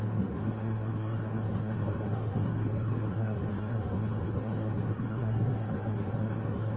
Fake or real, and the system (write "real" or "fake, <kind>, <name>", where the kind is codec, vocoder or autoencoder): fake, codec, SNAC